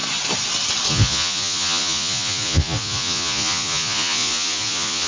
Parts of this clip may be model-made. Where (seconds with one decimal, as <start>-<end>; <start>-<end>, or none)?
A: 0.9-5.1

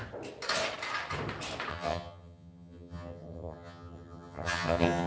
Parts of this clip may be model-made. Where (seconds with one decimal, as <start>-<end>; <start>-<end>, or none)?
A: 1.7-5.1